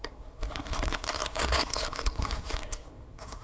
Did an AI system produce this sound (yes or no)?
yes